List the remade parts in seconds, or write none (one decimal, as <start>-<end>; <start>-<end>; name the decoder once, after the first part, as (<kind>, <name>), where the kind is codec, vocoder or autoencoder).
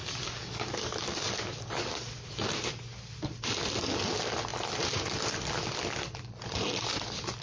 0.0-2.1 (codec, DAC)